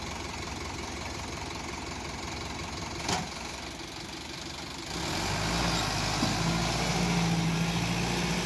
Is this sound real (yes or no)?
yes